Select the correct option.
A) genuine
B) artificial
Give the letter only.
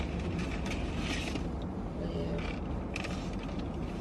A